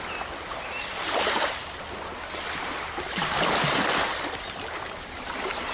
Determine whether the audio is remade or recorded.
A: recorded